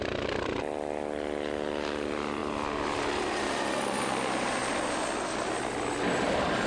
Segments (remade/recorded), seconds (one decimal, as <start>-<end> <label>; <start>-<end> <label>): 0.0-2.4 remade; 2.4-3.3 recorded; 3.3-4.6 remade; 4.6-6.1 recorded; 6.1-6.7 remade